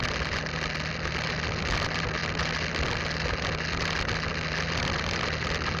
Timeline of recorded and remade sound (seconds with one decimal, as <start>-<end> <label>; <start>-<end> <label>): 0.0-5.8 recorded